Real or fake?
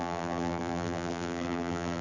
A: fake